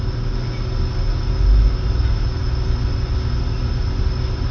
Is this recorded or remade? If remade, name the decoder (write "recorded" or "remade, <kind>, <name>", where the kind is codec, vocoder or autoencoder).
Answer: recorded